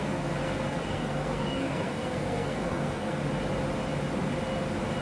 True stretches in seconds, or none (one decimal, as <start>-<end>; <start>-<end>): 3.2-5.0